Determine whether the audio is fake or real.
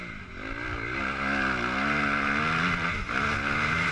real